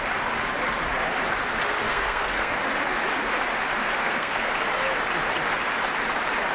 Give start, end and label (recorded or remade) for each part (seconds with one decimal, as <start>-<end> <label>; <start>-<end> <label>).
0.0-1.9 recorded; 1.9-2.5 remade; 2.5-4.0 recorded; 4.0-4.5 remade; 4.5-6.5 recorded